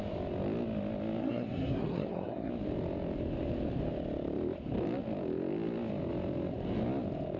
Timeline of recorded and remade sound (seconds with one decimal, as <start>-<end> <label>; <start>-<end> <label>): 0.0-1.2 recorded; 1.2-2.5 remade; 2.5-7.4 recorded